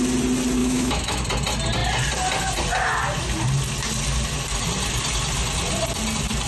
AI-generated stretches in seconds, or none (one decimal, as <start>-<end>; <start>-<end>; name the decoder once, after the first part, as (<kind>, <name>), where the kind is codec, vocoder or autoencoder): 0.6-1.2 (autoencoder, DAC-VAE)